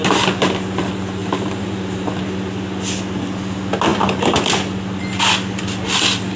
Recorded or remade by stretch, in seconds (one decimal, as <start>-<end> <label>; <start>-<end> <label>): 0.0-1.2 recorded; 1.2-2.1 remade; 2.1-6.4 recorded